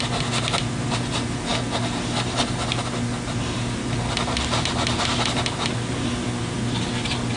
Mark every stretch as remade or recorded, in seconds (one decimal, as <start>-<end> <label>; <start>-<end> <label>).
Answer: 0.0-7.4 recorded